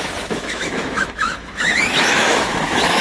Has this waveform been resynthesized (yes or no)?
yes